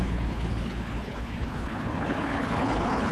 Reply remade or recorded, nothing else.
remade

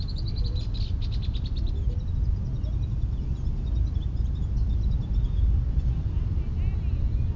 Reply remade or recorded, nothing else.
recorded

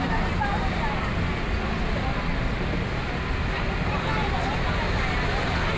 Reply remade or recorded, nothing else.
recorded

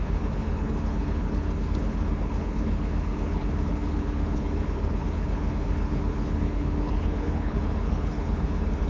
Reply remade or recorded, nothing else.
remade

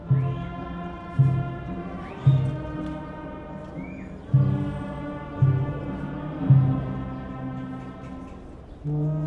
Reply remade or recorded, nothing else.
recorded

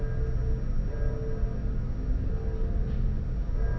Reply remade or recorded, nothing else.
recorded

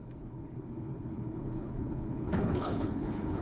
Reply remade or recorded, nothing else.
remade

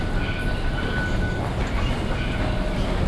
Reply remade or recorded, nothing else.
recorded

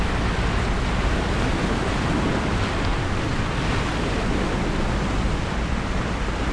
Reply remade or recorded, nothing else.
recorded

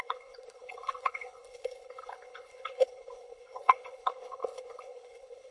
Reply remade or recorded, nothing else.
remade